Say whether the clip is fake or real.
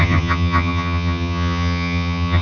fake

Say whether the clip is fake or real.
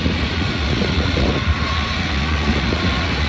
fake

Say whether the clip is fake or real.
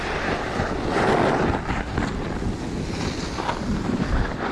real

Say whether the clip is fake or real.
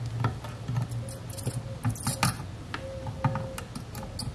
real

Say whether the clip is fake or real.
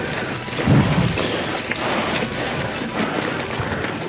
real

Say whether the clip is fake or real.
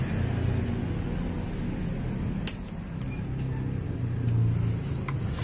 real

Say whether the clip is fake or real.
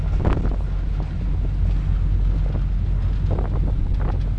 real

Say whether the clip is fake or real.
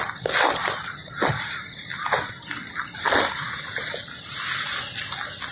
real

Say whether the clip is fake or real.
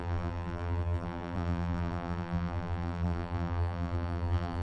fake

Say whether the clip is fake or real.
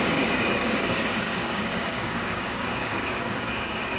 fake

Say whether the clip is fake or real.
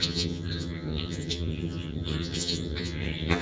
fake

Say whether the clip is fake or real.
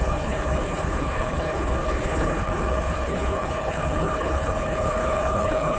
fake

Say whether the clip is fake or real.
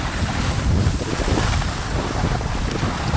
real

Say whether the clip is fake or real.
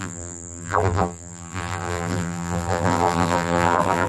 fake